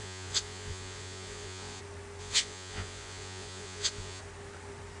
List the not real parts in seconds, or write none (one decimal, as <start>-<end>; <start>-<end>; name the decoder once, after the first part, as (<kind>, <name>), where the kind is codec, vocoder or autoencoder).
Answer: 0.0-1.8 (vocoder, Vocos); 2.2-4.2